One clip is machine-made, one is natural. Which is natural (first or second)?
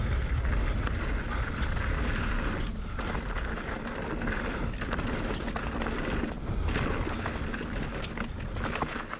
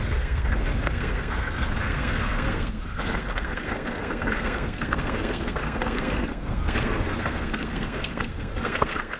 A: first